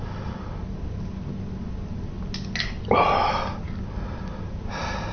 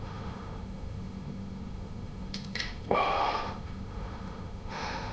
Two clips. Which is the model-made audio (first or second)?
second